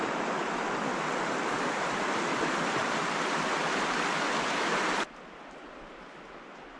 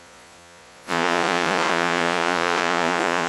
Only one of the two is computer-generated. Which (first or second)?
second